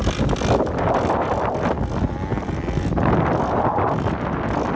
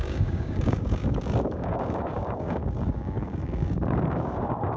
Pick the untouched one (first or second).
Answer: first